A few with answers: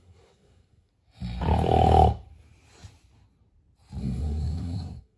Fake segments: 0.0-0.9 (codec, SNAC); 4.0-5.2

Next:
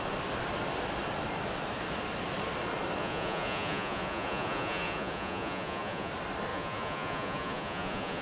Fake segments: 3.0-6.1 (vocoder, Vocos); 6.5-8.2

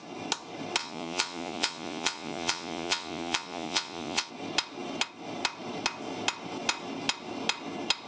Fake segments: 0.8-4.3 (vocoder, Vocos)

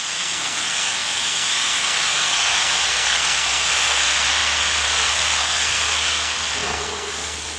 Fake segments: 0.0-7.6 (codec, SNAC)